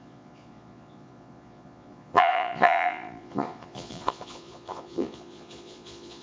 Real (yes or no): no